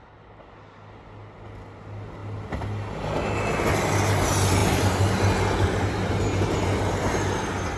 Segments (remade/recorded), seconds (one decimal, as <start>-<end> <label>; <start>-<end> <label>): 0.0-7.8 recorded